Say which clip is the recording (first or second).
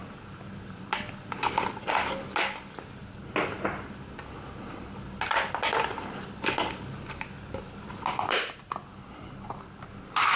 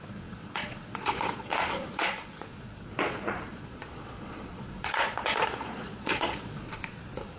first